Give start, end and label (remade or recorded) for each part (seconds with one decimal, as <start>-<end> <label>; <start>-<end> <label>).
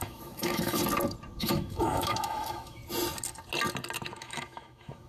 0.0-0.8 remade; 0.8-1.4 recorded; 1.4-2.8 remade; 2.8-4.2 recorded; 4.2-5.1 remade